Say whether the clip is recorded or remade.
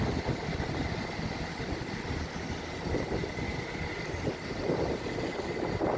recorded